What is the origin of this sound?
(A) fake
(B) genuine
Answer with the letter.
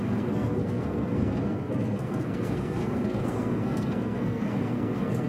A